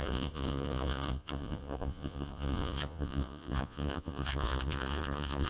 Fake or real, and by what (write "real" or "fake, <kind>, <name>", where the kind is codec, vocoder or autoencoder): fake, vocoder, Vocos